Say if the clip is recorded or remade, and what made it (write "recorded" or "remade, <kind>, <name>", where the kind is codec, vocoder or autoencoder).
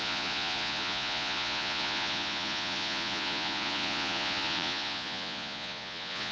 remade, vocoder, Vocos